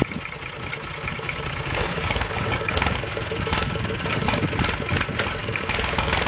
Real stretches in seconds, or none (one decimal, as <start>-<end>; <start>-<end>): 0.0-1.1; 4.5-5.4